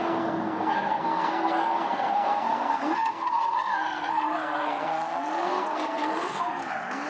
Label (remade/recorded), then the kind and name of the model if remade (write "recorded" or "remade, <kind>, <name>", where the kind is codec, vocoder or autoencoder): remade, codec, SNAC